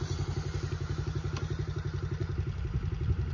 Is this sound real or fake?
real